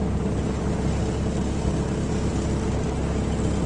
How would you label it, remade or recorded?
recorded